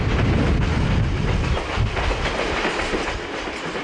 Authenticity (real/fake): real